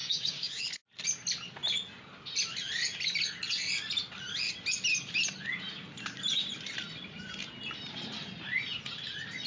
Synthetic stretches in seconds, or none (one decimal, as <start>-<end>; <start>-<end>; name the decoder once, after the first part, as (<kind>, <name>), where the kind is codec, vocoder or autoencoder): 0.0-0.6 (codec, DAC)